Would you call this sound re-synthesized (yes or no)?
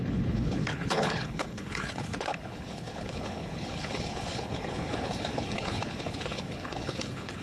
yes